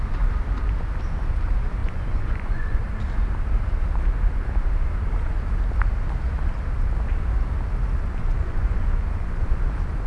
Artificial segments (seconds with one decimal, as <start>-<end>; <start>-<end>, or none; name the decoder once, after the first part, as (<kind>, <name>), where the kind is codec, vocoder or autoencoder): 1.8-2.8 (vocoder, Vocos); 8.2-9.6